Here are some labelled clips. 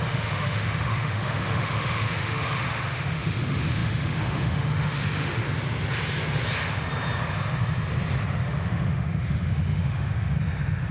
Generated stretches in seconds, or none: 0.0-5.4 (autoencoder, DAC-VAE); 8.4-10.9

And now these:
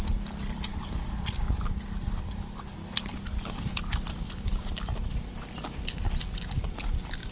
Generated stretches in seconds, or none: none

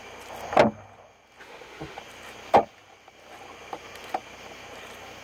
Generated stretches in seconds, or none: 1.4-2.0 (autoencoder, DAC-VAE)

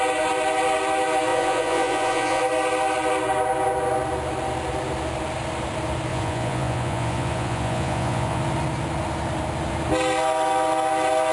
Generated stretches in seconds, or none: 1.3-2.4 (vocoder, Vocos); 6.1-8.4

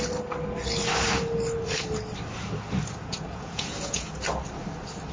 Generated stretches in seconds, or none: 3.0-4.1 (vocoder, Vocos)

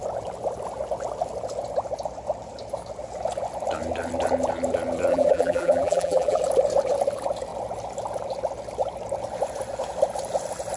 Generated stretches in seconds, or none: 5.1-6.4 (vocoder, BigVGAN v2)